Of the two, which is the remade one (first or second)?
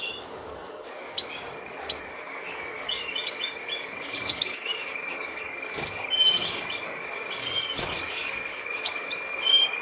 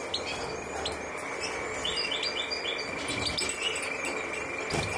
first